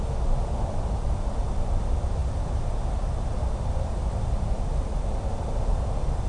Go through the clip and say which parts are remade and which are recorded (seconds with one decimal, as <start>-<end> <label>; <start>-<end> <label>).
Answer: 0.0-6.3 recorded